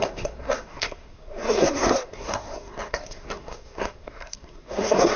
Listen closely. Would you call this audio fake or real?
fake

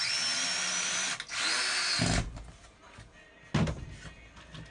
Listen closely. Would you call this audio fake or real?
real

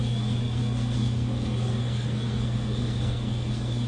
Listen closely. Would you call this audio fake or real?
fake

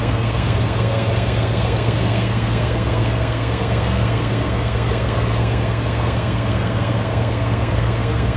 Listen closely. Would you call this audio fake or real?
fake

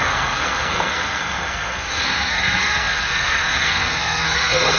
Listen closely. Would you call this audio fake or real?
fake